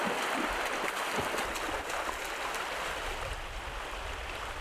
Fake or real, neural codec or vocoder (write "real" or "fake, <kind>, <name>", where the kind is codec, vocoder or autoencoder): real